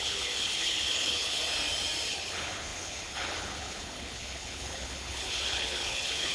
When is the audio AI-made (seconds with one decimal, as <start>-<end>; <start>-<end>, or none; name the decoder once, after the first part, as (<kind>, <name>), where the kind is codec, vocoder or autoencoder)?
0.0-1.4 (codec, HILCodec); 2.1-6.3